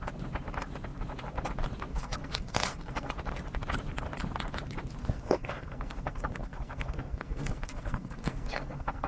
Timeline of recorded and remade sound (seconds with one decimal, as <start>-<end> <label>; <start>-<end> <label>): 0.0-1.9 recorded; 1.9-3.1 remade; 3.1-5.0 recorded; 5.0-9.1 remade